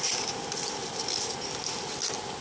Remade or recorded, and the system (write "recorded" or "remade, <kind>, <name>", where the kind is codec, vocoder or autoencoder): recorded